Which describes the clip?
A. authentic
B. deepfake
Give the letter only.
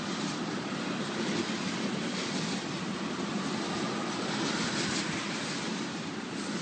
A